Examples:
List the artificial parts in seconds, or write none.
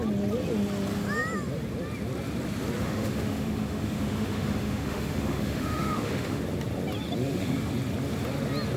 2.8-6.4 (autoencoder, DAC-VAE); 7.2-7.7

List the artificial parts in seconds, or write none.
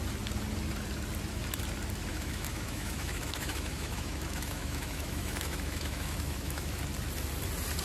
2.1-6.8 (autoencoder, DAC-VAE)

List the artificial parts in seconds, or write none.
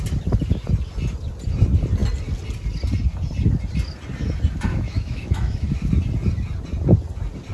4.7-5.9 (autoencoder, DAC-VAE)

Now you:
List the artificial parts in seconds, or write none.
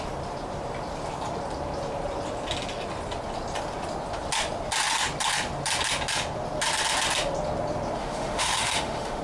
8.0-9.2 (autoencoder, DAC-VAE)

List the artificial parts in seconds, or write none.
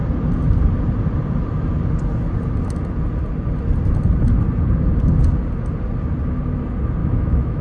7.0-7.6 (autoencoder, DAC-VAE)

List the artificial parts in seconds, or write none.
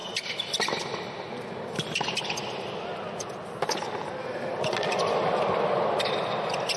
none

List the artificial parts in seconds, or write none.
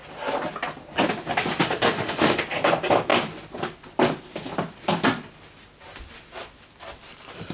1.6-2.4 (autoencoder, DAC-VAE)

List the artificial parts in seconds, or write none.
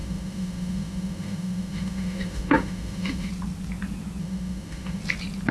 0.0-3.3 (autoencoder, DAC-VAE); 4.2-5.0